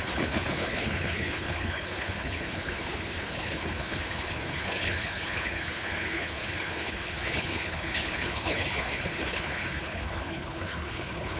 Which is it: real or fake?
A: fake